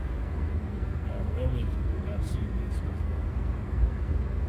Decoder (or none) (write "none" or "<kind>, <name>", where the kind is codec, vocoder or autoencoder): codec, SNAC